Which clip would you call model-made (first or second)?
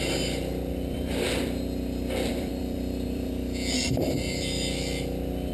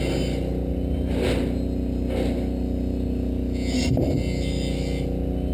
first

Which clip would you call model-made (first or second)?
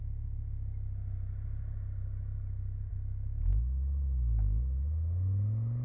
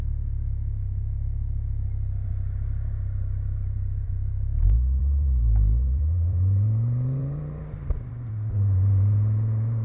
second